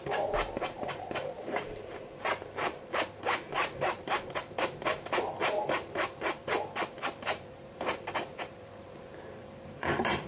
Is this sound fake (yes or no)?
yes